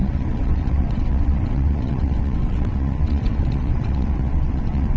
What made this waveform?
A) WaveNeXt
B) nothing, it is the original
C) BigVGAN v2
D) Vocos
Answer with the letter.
A